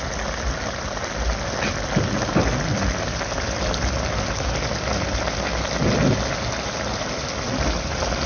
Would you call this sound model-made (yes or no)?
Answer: no